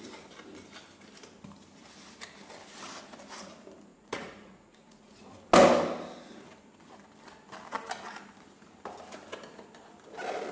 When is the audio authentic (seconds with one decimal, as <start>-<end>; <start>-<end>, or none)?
0.0-3.9; 5.2-10.5